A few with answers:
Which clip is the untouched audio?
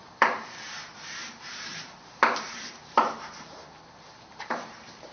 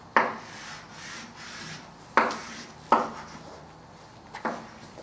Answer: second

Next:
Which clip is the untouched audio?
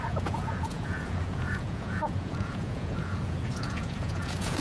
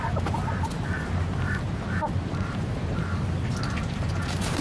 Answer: second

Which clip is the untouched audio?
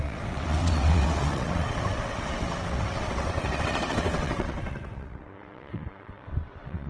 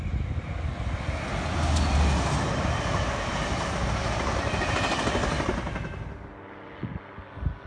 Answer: second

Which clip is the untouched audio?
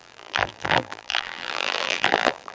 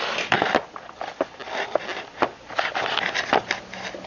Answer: second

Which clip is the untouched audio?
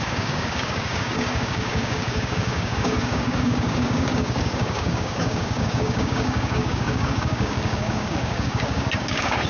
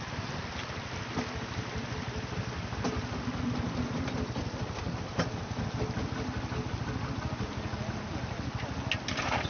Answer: second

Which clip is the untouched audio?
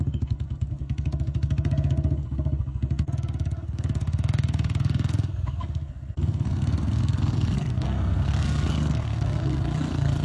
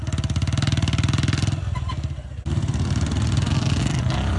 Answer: second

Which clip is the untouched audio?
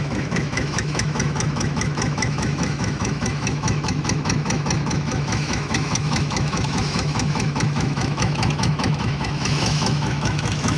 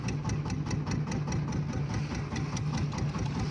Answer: second